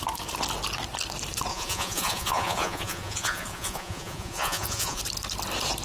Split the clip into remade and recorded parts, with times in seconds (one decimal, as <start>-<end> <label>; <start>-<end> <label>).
0.0-1.5 recorded; 1.5-5.0 remade; 5.0-5.8 recorded